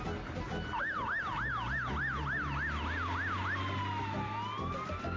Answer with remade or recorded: recorded